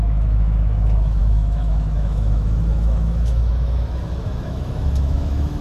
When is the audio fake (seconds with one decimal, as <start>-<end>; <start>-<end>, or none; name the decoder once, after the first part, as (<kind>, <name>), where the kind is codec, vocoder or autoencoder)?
0.0-5.6 (autoencoder, DAC-VAE)